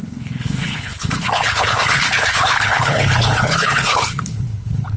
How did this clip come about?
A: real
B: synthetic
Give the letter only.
B